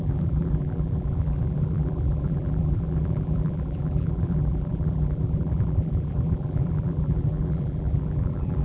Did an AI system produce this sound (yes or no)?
yes